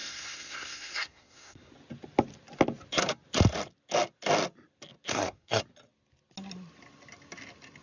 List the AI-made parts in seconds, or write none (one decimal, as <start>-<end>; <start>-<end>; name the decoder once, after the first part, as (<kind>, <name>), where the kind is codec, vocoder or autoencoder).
0.0-1.7 (codec, SNAC); 5.1-5.6